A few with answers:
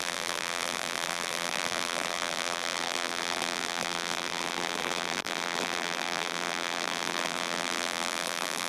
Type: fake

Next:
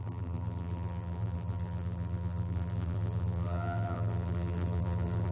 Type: fake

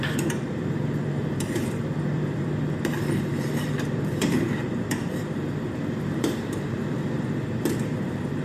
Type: fake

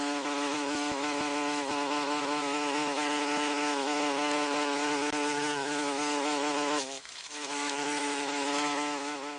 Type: fake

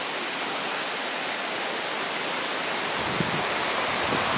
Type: real